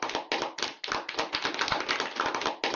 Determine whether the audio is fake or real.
real